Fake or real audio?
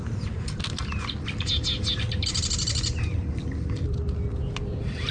real